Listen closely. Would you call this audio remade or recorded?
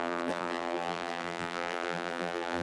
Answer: remade